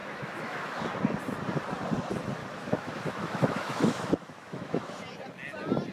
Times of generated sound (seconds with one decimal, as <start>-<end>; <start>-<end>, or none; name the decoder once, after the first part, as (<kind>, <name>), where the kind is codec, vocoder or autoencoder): 0.0-0.7 (autoencoder, DAC-VAE); 2.4-5.0